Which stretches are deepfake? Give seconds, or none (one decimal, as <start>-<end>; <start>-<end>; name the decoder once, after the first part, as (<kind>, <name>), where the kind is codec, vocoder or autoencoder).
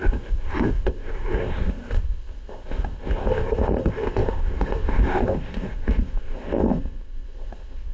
0.0-7.9 (codec, ZipCodec)